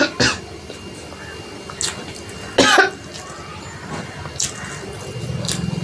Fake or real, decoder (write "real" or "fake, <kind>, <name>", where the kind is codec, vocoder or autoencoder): real